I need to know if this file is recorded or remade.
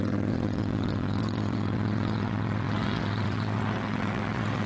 remade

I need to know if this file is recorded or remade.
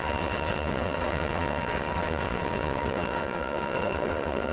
remade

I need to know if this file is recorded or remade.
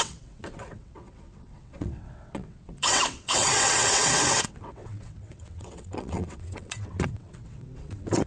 remade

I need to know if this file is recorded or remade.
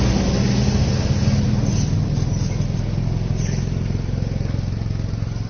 recorded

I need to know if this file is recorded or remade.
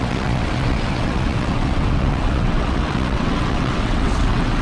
remade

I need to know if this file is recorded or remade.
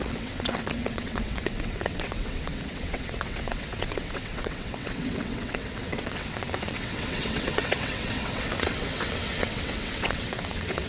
remade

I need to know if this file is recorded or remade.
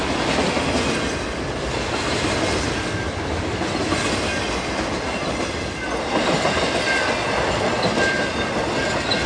recorded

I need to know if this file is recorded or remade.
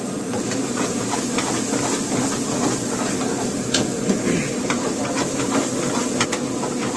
recorded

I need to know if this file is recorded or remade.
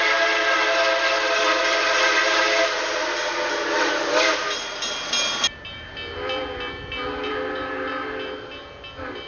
recorded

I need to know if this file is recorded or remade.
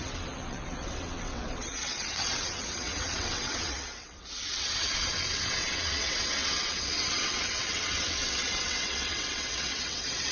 remade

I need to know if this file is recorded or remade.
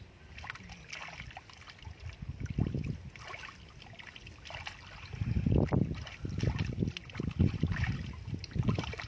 recorded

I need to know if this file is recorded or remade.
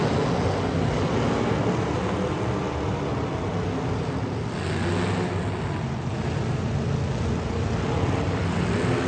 recorded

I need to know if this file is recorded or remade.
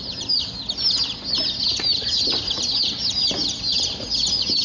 recorded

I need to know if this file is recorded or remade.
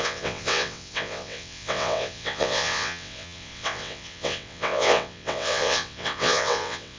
remade